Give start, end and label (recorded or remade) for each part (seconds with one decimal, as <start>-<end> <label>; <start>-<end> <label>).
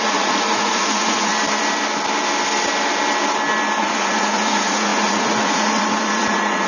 0.0-1.3 remade; 1.3-3.8 recorded; 3.8-6.7 remade